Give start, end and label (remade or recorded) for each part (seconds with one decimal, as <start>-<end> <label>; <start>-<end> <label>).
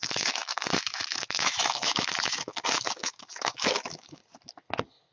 0.0-4.2 remade; 4.2-5.1 recorded